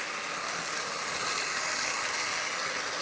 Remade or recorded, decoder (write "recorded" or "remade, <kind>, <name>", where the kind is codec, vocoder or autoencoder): recorded